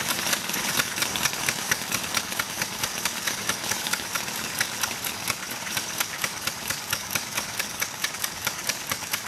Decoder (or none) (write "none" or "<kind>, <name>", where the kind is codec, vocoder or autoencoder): codec, DAC